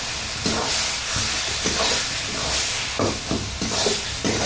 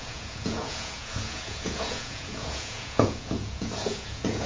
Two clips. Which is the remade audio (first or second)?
second